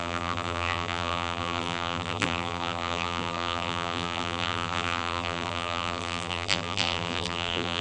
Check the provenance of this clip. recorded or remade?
remade